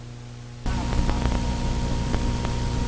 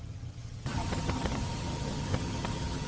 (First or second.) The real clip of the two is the first